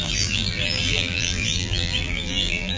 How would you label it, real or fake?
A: fake